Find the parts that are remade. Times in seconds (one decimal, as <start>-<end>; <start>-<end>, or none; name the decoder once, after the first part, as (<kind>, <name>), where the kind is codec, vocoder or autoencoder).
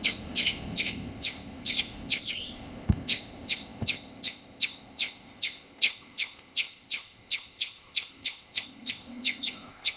0.0-10.0 (codec, ZipCodec)